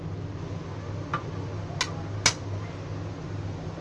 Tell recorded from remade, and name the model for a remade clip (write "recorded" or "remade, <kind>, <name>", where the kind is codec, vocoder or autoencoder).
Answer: recorded